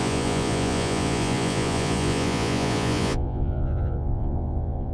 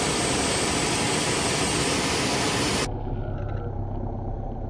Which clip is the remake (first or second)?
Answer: first